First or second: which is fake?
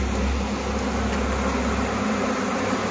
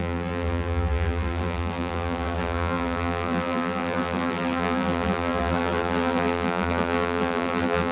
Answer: second